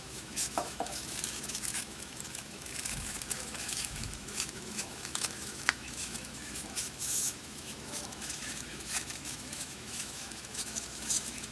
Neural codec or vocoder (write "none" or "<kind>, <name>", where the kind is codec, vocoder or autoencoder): autoencoder, DAC-VAE